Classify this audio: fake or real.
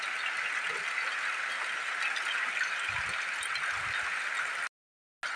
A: real